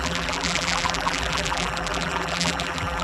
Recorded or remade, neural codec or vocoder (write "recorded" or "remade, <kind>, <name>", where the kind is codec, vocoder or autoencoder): remade, vocoder, BigVGAN v2